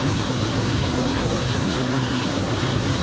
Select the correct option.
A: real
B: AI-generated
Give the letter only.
B